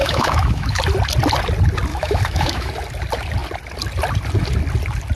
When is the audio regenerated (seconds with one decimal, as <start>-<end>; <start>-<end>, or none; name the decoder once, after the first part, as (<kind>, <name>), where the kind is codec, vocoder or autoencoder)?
0.0-0.8 (autoencoder, DAC-VAE); 1.9-2.7